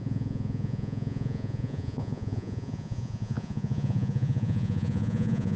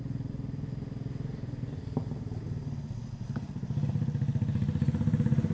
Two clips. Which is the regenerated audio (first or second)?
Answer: first